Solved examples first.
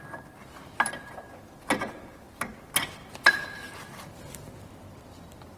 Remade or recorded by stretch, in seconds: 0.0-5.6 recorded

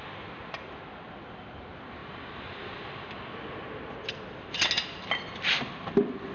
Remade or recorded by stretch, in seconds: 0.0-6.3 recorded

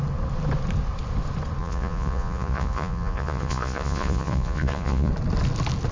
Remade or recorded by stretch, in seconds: 0.0-1.6 recorded; 1.6-5.1 remade; 5.1-5.9 recorded